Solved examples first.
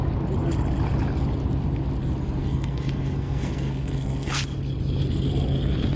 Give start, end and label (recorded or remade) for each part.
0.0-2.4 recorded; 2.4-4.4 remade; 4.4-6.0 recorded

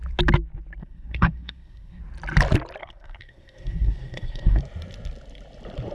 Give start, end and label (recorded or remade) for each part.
0.0-0.8 recorded; 0.8-2.0 remade; 2.0-2.8 recorded; 2.8-4.6 remade; 4.6-5.9 recorded

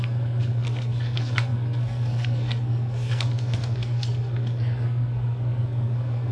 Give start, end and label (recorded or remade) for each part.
0.0-6.3 remade

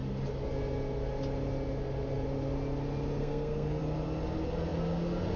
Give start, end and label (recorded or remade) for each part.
0.0-3.2 recorded; 3.2-3.8 remade; 3.8-5.4 recorded

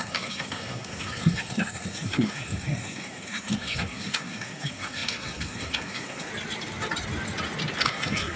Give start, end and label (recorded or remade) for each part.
0.0-6.3 remade; 6.3-7.8 recorded; 7.8-8.4 remade

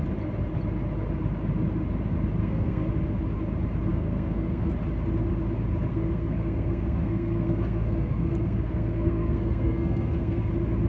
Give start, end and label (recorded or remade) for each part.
0.0-2.4 recorded; 2.4-2.9 remade; 2.9-3.9 recorded; 3.9-4.7 remade; 4.7-5.9 recorded; 5.9-10.5 remade; 10.5-10.9 recorded

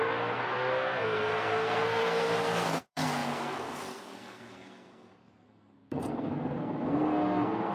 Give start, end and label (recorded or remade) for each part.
0.0-7.7 remade

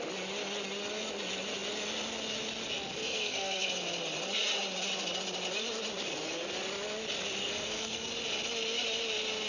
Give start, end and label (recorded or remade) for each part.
0.0-3.0 recorded; 3.0-3.7 remade; 3.7-7.4 recorded; 7.4-8.1 remade; 8.1-9.5 recorded